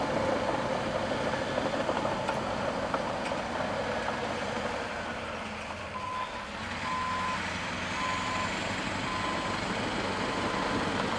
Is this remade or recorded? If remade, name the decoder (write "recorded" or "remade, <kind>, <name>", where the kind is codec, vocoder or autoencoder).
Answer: recorded